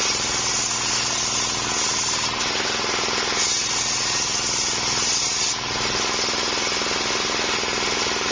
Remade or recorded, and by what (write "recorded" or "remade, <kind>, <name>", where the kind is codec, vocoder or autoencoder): recorded